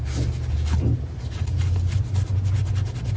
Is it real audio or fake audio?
real